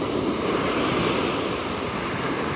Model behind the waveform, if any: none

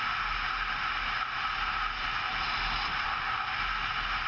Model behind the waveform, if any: none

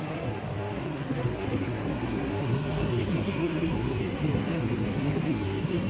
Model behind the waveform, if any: codec, SNAC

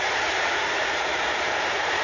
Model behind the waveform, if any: vocoder, BigVGAN v2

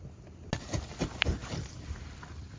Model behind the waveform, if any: none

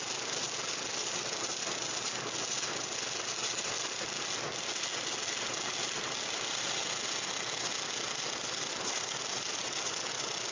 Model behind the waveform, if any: none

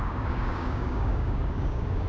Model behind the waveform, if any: codec, DAC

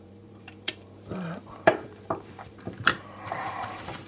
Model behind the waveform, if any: vocoder, BigVGAN v2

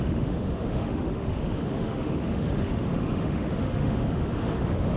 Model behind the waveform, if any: autoencoder, DAC-VAE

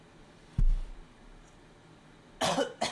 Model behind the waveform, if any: none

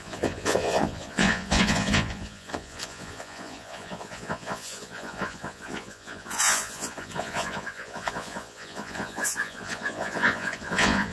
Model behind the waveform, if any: vocoder, Vocos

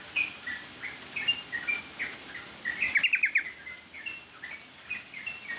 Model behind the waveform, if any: none